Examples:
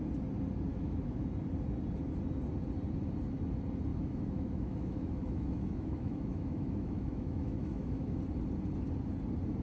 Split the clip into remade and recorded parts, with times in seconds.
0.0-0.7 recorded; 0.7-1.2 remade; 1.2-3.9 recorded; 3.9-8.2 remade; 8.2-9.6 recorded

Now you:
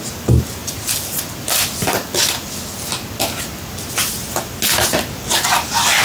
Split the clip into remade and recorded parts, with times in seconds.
0.0-6.0 recorded

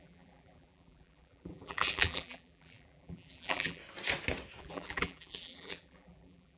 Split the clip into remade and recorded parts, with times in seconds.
0.0-3.8 remade; 3.8-4.6 recorded; 4.6-6.6 remade

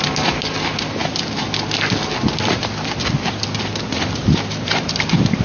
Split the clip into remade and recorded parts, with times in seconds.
0.0-4.2 recorded; 4.2-4.9 remade; 4.9-5.4 recorded

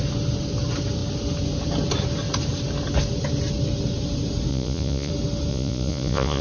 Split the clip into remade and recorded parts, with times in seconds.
0.0-4.5 recorded; 4.5-5.1 remade; 5.1-5.5 recorded; 5.5-6.4 remade

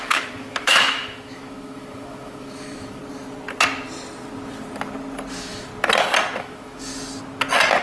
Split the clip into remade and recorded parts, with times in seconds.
0.0-3.0 remade; 3.0-5.3 recorded; 5.3-5.7 remade; 5.7-6.4 recorded; 6.4-6.9 remade; 6.9-7.8 recorded